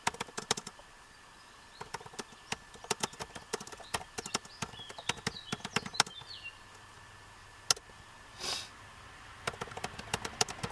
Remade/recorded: recorded